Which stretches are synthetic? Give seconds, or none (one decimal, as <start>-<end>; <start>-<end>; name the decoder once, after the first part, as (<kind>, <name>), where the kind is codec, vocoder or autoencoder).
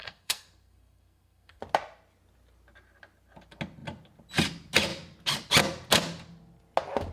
0.0-1.6 (codec, SNAC)